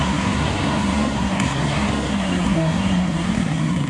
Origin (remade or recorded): remade